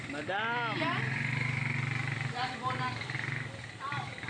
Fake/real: real